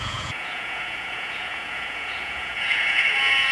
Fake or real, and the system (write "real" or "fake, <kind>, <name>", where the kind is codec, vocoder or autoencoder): fake, vocoder, Vocos